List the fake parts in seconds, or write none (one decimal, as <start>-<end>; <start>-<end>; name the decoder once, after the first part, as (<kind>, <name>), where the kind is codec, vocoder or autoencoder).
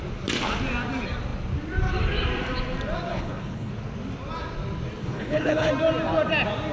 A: 3.1-3.7 (codec, HILCodec); 5.0-5.7